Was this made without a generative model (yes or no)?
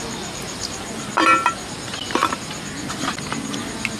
yes